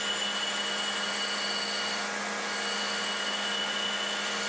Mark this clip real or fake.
real